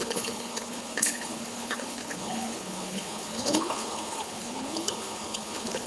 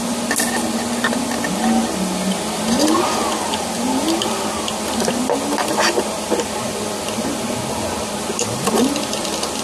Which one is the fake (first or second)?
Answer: first